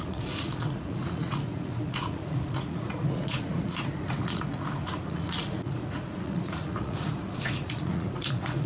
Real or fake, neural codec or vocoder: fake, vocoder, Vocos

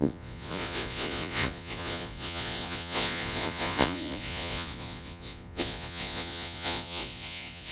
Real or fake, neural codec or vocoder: fake, vocoder, Vocos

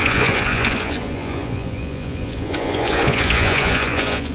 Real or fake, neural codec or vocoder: fake, vocoder, Vocos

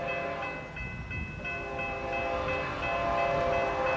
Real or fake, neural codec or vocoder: real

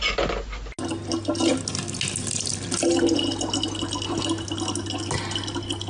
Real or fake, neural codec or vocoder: real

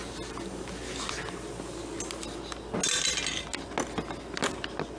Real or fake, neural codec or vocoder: real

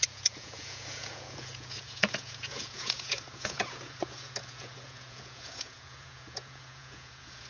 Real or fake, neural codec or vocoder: fake, vocoder, Vocos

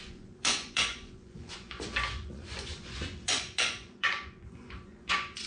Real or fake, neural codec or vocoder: fake, vocoder, Vocos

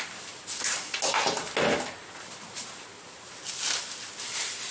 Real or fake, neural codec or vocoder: real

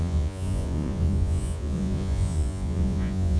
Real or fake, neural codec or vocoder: fake, vocoder, Vocos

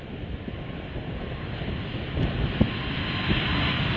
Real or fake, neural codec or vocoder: real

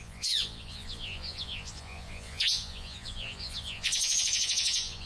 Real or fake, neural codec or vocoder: fake, vocoder, Vocos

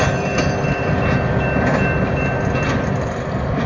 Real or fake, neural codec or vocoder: real